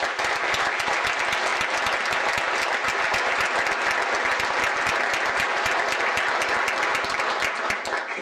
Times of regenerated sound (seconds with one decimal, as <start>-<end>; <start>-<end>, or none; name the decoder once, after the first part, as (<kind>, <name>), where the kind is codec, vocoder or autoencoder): 1.5-6.4 (vocoder, BigVGAN v2); 6.9-7.4